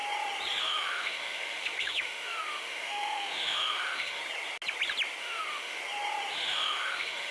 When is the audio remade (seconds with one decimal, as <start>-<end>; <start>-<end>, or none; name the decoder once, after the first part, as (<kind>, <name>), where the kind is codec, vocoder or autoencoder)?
0.6-4.2 (autoencoder, DAC-VAE); 5.2-5.8; 6.3-7.3